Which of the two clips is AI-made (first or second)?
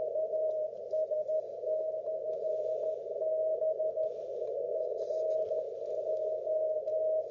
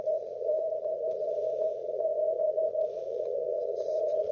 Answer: second